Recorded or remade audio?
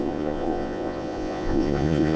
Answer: remade